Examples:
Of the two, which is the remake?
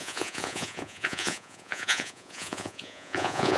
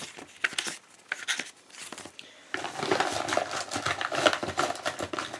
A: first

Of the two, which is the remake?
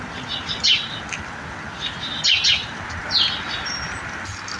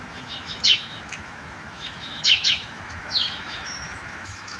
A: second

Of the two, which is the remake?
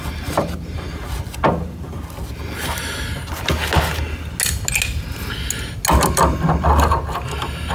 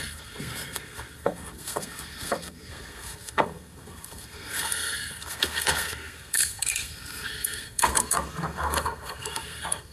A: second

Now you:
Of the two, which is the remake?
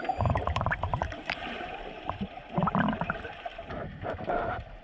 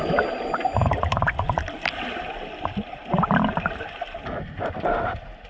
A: first